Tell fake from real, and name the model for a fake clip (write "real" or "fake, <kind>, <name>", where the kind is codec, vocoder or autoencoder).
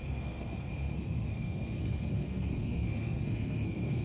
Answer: fake, codec, SNAC